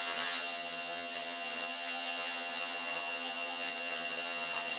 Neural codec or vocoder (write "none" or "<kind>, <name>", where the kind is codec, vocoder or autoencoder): vocoder, HiFi-GAN